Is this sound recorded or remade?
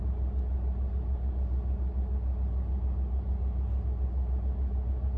recorded